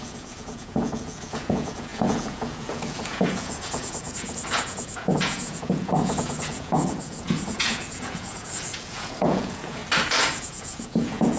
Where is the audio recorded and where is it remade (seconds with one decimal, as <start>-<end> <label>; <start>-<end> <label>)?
0.0-9.8 remade; 9.8-10.3 recorded; 10.3-11.4 remade